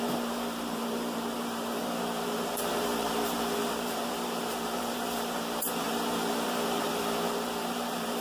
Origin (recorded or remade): remade